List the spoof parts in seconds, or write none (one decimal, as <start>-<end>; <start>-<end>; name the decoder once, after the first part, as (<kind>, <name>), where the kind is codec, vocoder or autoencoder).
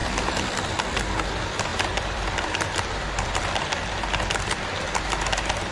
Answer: 0.0-1.1 (vocoder, BigVGAN v2); 1.7-3.9